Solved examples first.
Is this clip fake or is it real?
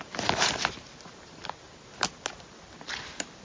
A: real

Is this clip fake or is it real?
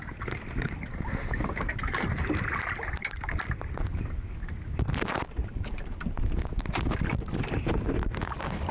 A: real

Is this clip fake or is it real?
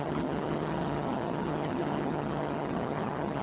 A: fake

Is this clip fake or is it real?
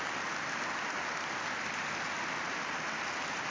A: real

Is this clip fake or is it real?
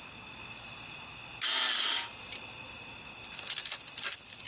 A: real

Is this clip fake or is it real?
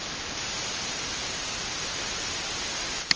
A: real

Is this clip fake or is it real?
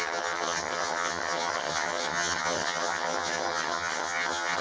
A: fake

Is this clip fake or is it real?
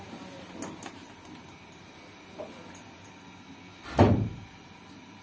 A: real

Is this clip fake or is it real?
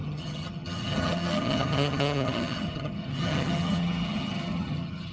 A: fake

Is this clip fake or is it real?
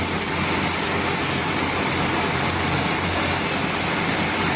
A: real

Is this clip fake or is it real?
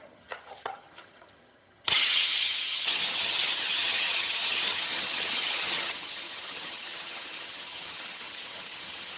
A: fake